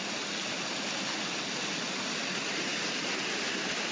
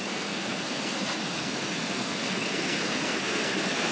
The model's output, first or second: second